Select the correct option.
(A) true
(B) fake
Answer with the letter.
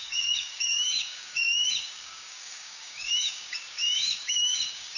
B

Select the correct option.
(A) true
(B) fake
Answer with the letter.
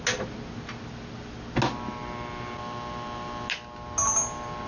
A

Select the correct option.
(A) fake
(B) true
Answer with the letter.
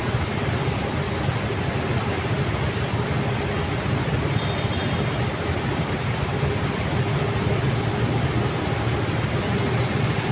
B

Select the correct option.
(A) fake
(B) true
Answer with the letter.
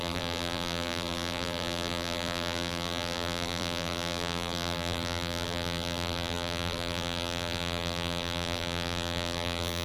A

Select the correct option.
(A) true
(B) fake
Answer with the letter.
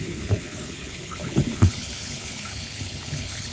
B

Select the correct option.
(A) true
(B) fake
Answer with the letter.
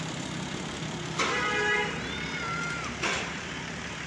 B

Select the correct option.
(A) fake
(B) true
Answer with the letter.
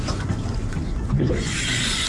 A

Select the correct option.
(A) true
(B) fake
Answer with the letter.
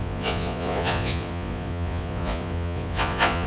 B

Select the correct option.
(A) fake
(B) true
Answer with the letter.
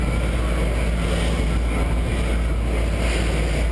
B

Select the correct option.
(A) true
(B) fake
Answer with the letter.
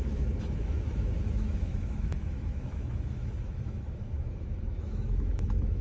B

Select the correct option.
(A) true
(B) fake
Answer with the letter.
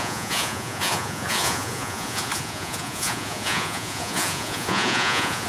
B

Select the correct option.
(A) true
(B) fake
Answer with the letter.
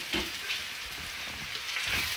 A